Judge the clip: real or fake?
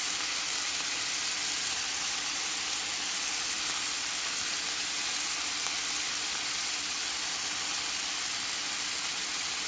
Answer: real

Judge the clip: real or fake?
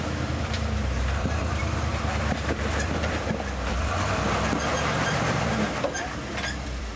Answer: fake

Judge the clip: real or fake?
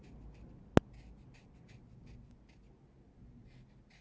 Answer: real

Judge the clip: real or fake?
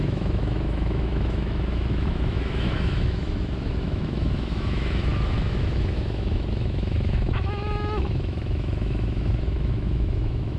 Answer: fake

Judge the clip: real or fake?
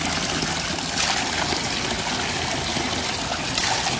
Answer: real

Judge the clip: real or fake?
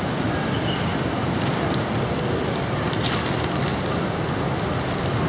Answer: real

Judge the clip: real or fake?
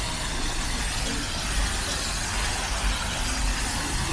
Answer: real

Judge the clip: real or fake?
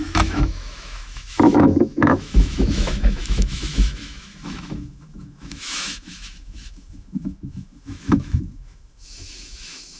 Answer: fake